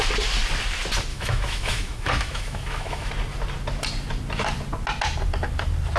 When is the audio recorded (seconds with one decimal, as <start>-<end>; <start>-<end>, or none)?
0.0-1.1; 3.1-6.0